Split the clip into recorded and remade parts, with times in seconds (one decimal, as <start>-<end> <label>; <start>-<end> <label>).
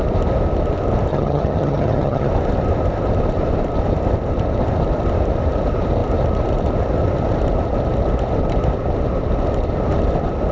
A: 0.0-1.1 recorded; 1.1-2.3 remade; 2.3-10.5 recorded